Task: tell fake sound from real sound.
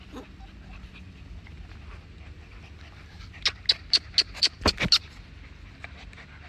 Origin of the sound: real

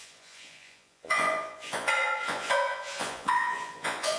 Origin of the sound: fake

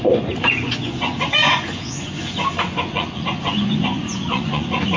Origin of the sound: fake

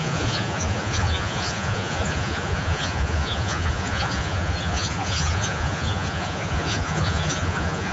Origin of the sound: fake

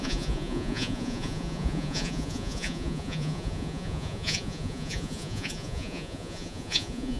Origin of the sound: fake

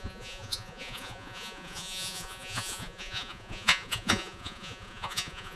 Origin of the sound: fake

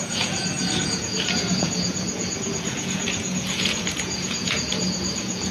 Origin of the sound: fake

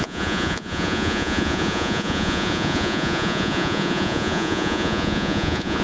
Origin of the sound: fake